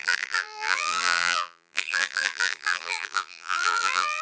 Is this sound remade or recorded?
remade